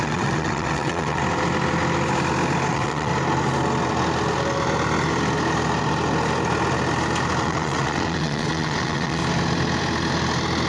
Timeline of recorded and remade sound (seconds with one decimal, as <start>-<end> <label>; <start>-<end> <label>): 0.0-1.2 remade; 1.2-2.7 recorded; 2.7-3.1 remade; 3.1-7.4 recorded; 7.4-9.2 remade; 9.2-10.7 recorded